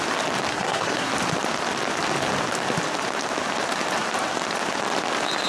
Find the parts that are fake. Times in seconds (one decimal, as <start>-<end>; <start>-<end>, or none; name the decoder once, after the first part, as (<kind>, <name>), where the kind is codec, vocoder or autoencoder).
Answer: 0.5-1.1 (codec, SNAC)